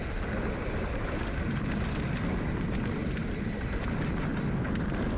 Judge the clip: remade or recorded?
recorded